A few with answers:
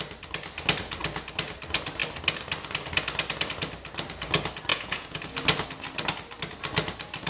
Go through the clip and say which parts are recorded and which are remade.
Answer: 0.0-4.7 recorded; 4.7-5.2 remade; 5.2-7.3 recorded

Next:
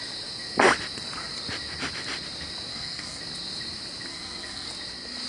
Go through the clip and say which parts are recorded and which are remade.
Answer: 0.0-2.7 recorded; 2.7-3.2 remade; 3.2-4.1 recorded; 4.1-4.7 remade; 4.7-5.3 recorded